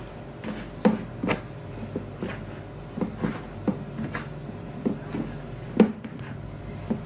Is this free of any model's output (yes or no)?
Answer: yes